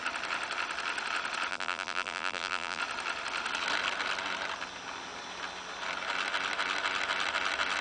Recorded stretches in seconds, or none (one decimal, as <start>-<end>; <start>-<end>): 0.0-1.5; 2.8-7.8